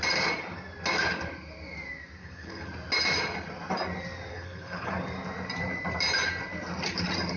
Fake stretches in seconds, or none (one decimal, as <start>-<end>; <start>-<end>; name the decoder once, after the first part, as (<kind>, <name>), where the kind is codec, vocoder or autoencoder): 2.2-2.7 (codec, HILCodec); 4.3-4.9

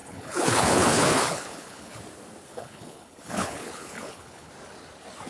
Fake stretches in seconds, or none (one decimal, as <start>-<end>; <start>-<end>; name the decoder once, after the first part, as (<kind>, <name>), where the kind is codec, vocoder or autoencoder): 0.0-2.0 (codec, HILCodec); 2.5-4.5